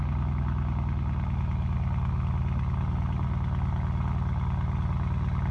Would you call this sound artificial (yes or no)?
no